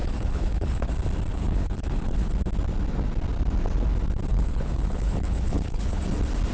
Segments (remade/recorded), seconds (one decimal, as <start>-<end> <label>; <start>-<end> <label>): 0.0-0.9 remade; 0.9-1.3 recorded; 1.3-2.3 remade; 2.3-4.3 recorded; 4.3-6.0 remade; 6.0-6.5 recorded